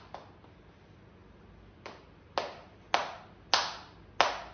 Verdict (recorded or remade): recorded